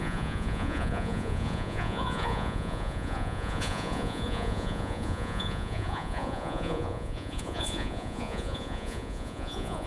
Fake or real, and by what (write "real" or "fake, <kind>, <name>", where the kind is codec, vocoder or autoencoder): fake, vocoder, Vocos